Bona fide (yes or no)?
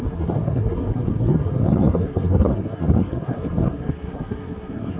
no